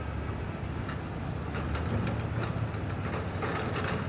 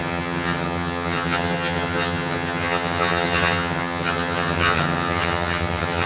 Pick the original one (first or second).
first